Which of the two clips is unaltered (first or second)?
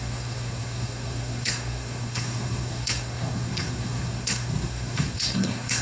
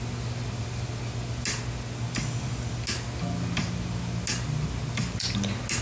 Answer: second